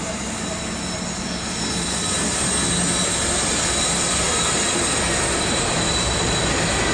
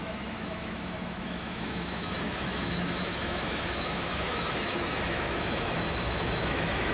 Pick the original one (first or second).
first